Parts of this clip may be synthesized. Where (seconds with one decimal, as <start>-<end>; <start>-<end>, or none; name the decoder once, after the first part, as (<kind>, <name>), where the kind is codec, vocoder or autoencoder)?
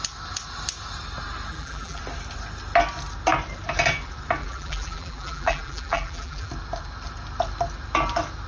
1.5-2.0 (vocoder, BigVGAN v2); 4.4-6.5